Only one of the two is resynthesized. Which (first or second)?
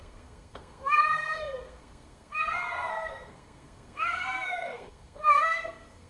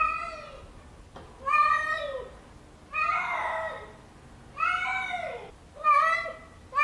first